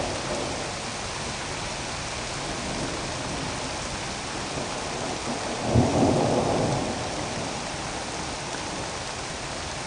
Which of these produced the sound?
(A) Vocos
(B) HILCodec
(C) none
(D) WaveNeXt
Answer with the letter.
C